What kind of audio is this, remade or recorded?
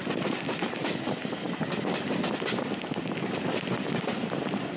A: recorded